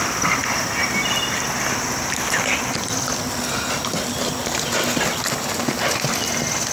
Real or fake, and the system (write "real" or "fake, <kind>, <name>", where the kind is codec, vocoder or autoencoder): real